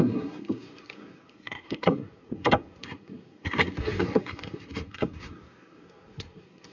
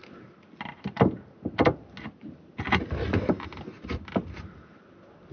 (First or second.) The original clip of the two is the second